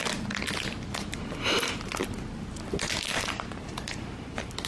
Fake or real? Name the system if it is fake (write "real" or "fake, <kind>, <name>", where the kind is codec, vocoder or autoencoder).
real